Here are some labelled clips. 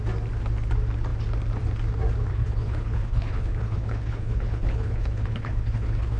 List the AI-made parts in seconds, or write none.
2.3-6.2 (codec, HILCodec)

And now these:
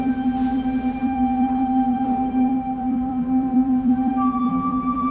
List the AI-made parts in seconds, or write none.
0.0-5.1 (vocoder, BigVGAN v2)

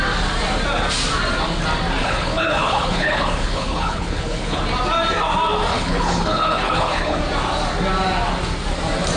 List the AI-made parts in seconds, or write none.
2.0-4.6 (codec, HILCodec); 5.7-7.2

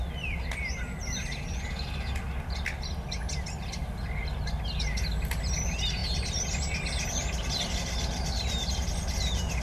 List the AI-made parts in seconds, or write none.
none

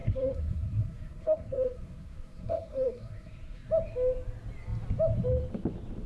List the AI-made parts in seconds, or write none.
0.0-3.7 (codec, SNAC)

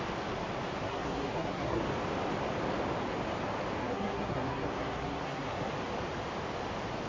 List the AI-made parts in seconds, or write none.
0.8-1.8 (codec, SNAC); 3.8-5.7

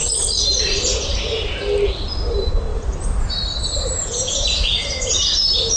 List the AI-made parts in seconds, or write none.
2.7-5.1 (vocoder, BigVGAN v2)